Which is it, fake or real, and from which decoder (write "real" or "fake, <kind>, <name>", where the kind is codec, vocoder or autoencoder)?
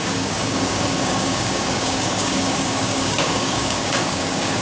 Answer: fake, codec, DAC